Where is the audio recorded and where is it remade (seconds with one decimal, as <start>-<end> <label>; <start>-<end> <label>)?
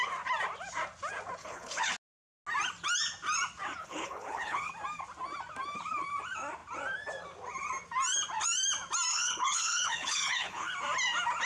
0.0-1.4 recorded; 1.4-1.9 remade; 1.9-3.8 recorded; 3.8-4.7 remade; 4.7-9.1 recorded; 9.1-10.7 remade; 10.7-11.5 recorded